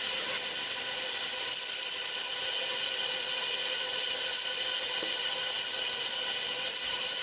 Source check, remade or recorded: recorded